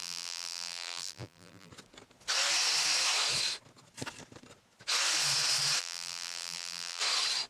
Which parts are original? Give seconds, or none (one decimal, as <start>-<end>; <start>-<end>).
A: 1.7-5.8; 7.0-7.5